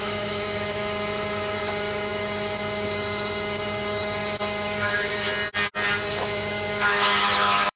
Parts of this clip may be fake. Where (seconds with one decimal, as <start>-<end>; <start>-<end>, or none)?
0.0-5.3; 6.1-7.8